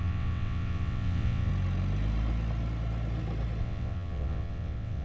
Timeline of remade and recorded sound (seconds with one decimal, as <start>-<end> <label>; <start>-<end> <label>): 0.0-1.5 remade; 1.5-3.6 recorded; 3.6-5.0 remade